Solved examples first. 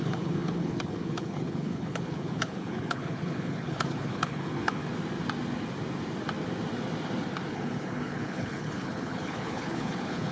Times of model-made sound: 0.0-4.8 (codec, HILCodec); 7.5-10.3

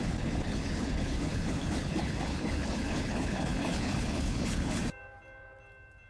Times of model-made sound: 0.0-4.8 (codec, HILCodec)

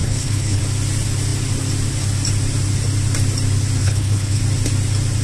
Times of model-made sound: 0.0-0.6 (codec, HILCodec); 3.8-4.4